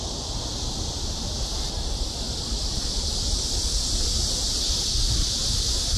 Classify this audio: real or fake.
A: real